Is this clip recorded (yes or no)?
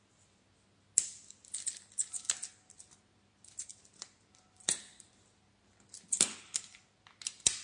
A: yes